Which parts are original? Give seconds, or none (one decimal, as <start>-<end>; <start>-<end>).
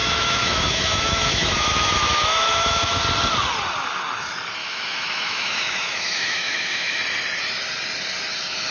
3.0-4.6; 7.0-8.7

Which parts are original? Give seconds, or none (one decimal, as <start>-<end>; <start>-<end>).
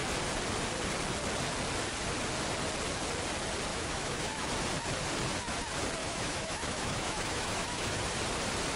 0.0-3.7; 4.5-6.0; 8.0-8.8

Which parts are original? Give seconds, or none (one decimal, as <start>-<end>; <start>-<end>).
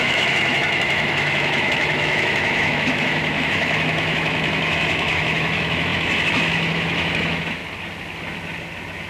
7.6-9.1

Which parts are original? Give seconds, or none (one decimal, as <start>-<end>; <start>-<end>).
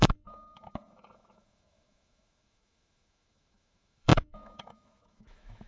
none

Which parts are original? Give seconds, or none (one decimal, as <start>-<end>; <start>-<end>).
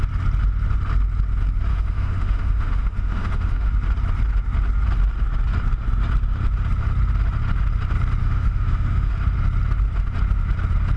0.0-1.7; 3.7-8.2; 9.1-11.0